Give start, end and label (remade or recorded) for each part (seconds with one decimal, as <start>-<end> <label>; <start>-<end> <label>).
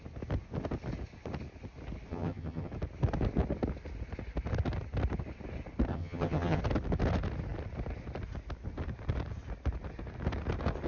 0.0-2.1 recorded; 2.1-2.7 remade; 2.7-5.9 recorded; 5.9-6.6 remade; 6.6-10.9 recorded